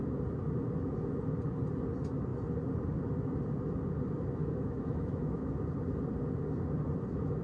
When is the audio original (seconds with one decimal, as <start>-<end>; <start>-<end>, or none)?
0.0-4.4; 5.5-7.4